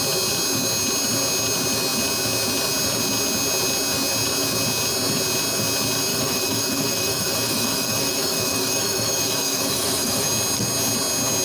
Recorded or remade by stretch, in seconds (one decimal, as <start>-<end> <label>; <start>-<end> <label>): 0.0-6.1 recorded; 6.1-10.3 remade; 10.3-11.4 recorded